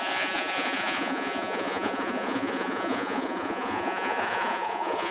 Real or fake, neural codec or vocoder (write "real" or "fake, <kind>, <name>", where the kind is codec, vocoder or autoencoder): fake, vocoder, Vocos